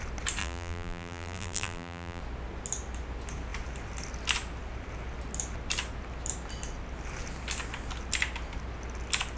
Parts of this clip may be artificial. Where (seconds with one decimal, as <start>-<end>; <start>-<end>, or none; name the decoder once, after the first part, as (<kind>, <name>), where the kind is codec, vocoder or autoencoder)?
0.4-2.2 (vocoder, BigVGAN v2)